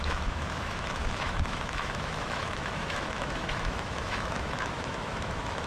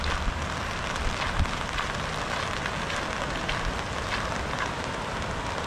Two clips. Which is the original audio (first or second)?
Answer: second